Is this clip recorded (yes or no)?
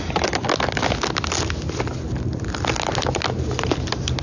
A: yes